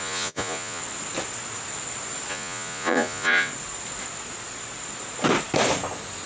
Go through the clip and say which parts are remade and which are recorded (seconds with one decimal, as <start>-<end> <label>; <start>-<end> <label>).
0.0-0.8 remade; 0.8-2.3 recorded; 2.3-3.5 remade; 3.5-6.3 recorded